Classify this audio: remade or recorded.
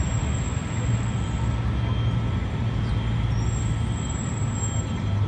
recorded